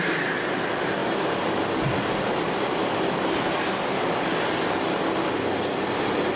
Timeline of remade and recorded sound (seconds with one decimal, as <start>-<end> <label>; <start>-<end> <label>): 0.0-6.4 recorded